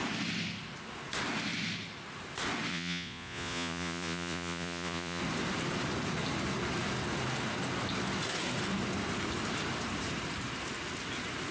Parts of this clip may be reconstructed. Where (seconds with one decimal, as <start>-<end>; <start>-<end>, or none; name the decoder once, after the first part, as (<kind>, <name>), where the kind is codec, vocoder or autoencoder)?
2.7-5.2 (vocoder, Vocos)